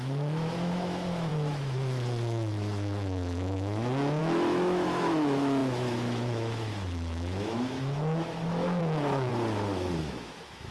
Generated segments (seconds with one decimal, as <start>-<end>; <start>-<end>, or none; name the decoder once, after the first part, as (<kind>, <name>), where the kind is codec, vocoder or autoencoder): 0.0-9.3 (autoencoder, DAC-VAE); 10.0-10.7

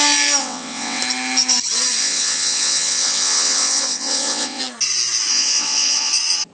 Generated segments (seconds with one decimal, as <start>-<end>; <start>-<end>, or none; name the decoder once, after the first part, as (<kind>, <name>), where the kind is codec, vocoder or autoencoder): 0.4-1.0 (vocoder, WaveNeXt); 2.0-4.6; 5.3-6.1

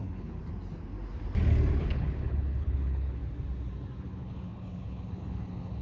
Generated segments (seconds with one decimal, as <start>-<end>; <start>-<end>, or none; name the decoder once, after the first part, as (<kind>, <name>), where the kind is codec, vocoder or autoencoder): 0.0-0.4 (codec, HILCodec); 1.8-3.2; 4.0-5.8